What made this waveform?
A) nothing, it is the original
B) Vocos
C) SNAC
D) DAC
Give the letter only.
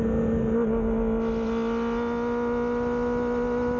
A